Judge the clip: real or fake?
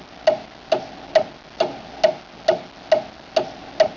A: real